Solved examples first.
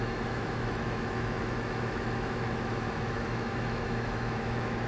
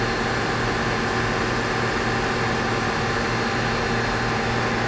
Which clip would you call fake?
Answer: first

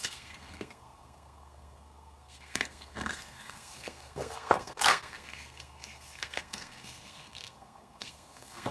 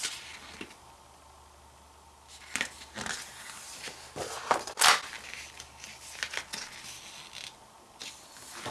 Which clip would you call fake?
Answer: first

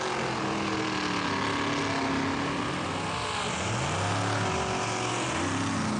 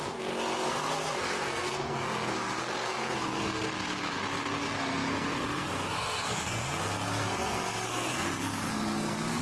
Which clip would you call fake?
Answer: second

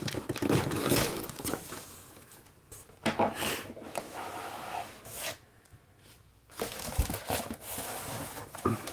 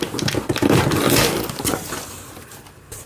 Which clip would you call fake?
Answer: first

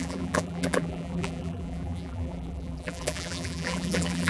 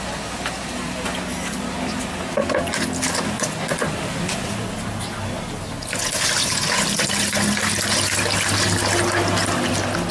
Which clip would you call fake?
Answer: first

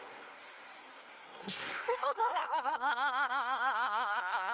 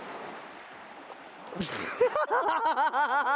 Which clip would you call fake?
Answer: first